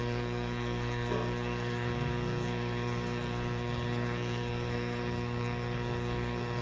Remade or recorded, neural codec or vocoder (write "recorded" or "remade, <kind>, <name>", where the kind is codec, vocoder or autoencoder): remade, codec, SNAC